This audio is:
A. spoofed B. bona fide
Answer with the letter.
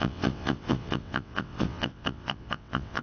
A